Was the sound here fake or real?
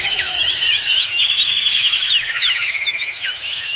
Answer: fake